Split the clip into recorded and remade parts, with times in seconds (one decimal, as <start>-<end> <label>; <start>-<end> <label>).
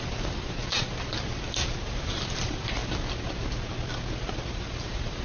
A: 0.0-2.8 remade; 2.8-4.3 recorded; 4.3-5.2 remade